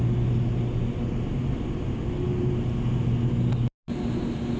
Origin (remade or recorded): recorded